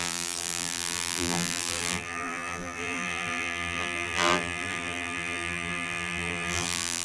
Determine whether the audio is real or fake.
fake